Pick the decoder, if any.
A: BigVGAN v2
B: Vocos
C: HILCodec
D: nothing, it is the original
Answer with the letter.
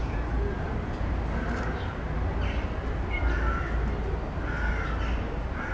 D